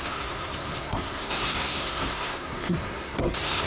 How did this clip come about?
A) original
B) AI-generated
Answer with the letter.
B